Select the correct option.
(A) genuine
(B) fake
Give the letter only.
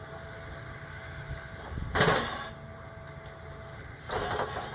A